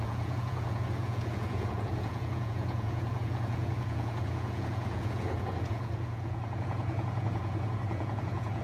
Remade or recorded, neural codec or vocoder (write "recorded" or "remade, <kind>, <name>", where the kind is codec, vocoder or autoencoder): remade, vocoder, Vocos